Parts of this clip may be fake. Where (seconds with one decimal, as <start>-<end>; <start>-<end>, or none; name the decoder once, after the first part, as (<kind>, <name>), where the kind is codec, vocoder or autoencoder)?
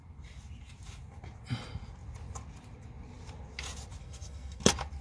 4.0-4.6 (codec, SNAC)